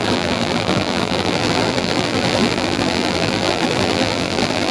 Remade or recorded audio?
remade